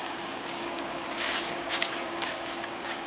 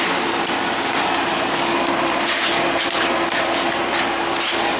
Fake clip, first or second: first